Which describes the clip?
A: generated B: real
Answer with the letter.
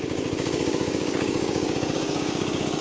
A